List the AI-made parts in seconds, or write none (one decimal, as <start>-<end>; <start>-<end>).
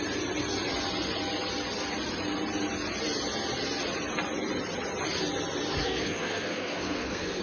5.8-7.4